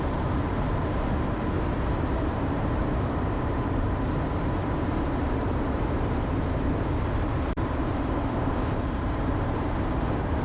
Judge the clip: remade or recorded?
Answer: remade